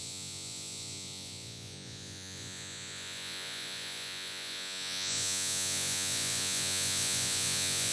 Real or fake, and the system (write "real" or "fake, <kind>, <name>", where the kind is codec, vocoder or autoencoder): fake, vocoder, Vocos